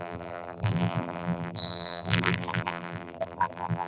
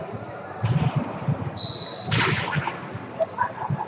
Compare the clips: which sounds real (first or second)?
second